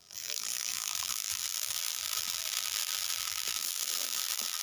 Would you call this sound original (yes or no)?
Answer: no